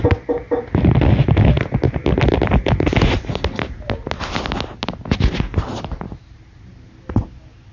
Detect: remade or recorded recorded